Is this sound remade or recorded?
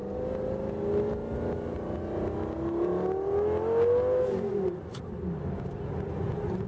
recorded